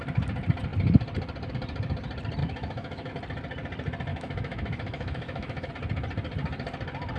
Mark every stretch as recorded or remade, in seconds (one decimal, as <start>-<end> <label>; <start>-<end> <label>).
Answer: 0.0-2.4 recorded; 2.4-3.1 remade; 3.1-4.1 recorded; 4.1-5.7 remade; 5.7-7.2 recorded